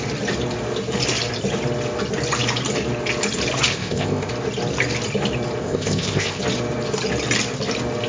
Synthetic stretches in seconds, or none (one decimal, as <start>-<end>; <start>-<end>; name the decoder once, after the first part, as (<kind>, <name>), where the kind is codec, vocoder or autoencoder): 3.7-4.3 (codec, ZipCodec); 5.6-6.4